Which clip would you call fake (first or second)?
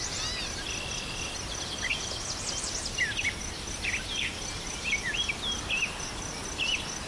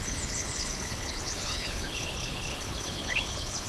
second